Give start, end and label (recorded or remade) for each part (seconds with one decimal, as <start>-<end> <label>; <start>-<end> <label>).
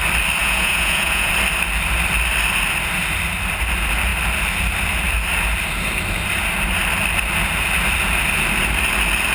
0.0-0.4 recorded; 0.4-1.3 remade; 1.3-9.3 recorded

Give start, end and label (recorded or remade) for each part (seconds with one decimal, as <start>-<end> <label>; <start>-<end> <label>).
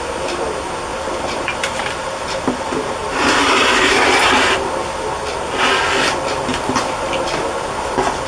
0.0-0.9 recorded; 0.9-4.7 remade; 4.7-8.3 recorded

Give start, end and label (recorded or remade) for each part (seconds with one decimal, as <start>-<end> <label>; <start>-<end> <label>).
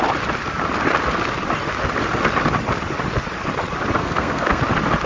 0.0-4.0 recorded; 4.0-4.6 remade; 4.6-5.1 recorded